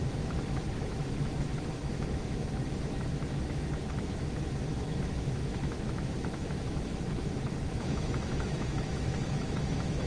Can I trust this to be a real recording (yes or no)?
no